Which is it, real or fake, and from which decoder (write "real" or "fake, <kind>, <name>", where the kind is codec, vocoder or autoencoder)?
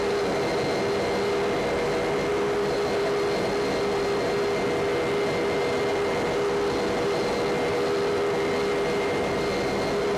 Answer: real